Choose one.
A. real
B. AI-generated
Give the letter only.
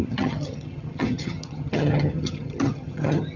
B